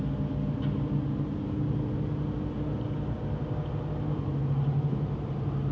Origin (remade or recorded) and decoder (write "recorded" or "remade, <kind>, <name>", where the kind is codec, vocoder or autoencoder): recorded